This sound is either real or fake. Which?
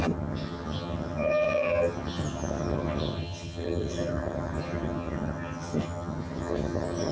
fake